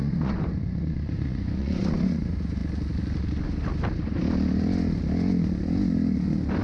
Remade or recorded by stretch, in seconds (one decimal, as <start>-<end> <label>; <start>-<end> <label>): 0.0-2.6 remade; 2.6-6.6 recorded